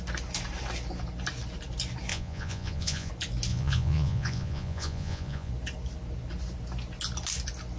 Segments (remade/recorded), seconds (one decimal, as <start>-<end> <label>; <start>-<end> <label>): 0.0-2.1 recorded; 2.1-3.1 remade; 3.1-3.5 recorded; 3.5-5.5 remade; 5.5-7.8 recorded